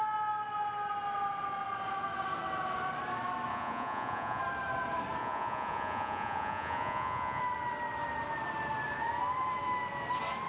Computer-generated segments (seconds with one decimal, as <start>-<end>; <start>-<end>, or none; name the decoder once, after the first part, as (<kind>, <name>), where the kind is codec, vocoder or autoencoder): 3.5-4.4 (vocoder, Vocos); 5.2-7.4